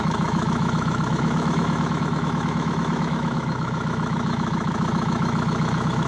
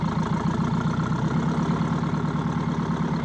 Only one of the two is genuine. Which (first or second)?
second